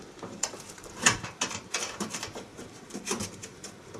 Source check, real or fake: fake